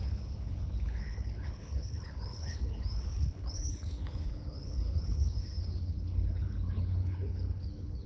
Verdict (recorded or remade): remade